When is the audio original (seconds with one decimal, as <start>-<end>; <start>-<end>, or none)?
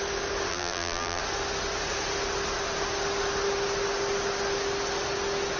0.0-0.5; 1.2-5.6